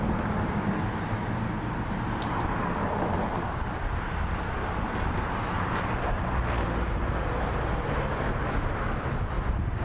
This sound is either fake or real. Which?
real